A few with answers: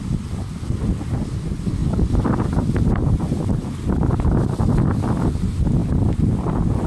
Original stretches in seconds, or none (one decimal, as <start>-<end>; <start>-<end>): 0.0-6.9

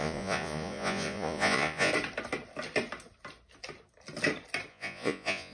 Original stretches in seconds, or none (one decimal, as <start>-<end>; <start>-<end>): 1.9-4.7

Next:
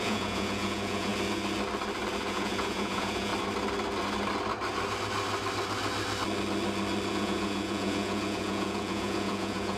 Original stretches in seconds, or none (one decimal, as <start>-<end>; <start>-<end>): 1.1-2.2; 3.3-7.1

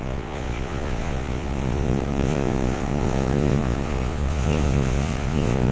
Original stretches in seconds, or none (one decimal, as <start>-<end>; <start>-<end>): none